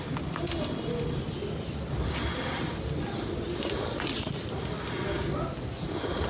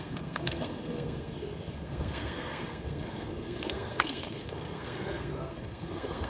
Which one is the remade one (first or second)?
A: second